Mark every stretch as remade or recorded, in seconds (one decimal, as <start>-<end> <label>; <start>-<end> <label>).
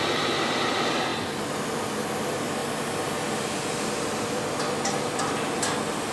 0.0-6.1 recorded